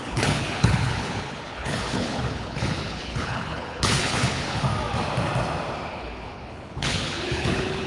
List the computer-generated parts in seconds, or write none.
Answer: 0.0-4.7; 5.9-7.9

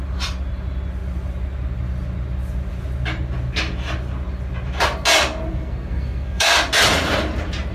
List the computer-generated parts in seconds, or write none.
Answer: 5.5-6.5

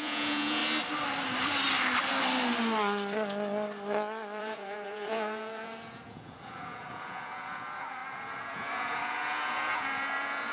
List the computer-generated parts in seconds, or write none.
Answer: 0.0-0.6; 4.4-10.5

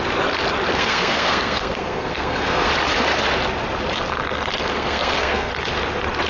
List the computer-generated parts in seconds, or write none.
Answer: 0.7-2.7; 4.7-5.5

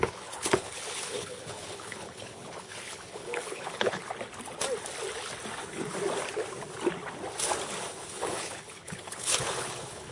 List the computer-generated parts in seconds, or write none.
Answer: 0.0-4.0; 8.0-10.1

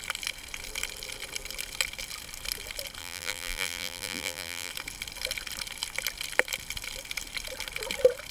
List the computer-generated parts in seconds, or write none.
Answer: 3.0-4.7

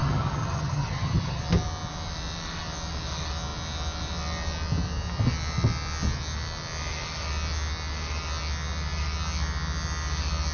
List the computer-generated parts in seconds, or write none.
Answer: 0.0-1.4